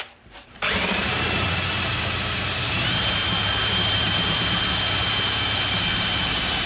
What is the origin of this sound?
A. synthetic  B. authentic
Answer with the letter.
A